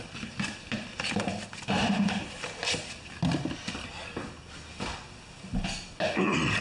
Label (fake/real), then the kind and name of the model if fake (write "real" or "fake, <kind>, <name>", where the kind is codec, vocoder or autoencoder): real